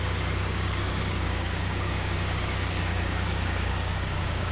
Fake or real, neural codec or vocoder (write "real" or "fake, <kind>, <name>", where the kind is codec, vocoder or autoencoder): fake, codec, DAC